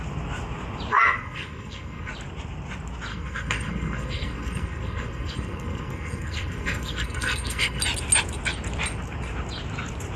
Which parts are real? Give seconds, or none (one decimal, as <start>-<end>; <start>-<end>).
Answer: 0.0-0.9; 2.1-3.1; 7.8-10.2